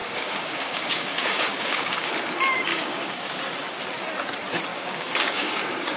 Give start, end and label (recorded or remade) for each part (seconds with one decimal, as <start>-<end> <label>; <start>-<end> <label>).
0.0-2.1 remade; 2.1-2.7 recorded; 2.7-3.4 remade; 3.4-4.7 recorded; 4.7-6.0 remade